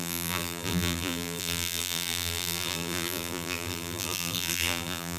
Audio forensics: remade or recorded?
remade